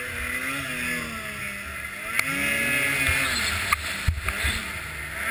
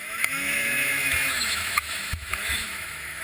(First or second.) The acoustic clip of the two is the first